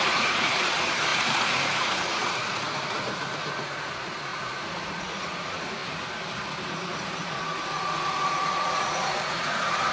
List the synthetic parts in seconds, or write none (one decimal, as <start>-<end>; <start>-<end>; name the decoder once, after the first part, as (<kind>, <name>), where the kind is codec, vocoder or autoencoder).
0.0-5.8 (vocoder, Vocos); 6.7-9.9